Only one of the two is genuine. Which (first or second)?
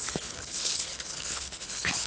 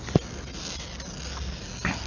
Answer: second